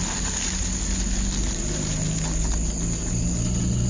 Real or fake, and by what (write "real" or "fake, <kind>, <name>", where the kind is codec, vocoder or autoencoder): real